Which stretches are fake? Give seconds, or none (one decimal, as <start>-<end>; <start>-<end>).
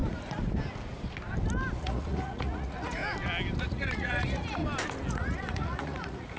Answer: 1.8-3.0; 3.6-4.6; 5.1-6.4